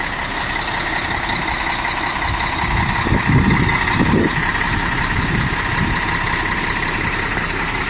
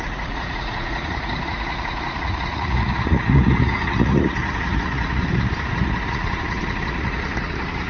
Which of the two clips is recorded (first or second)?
first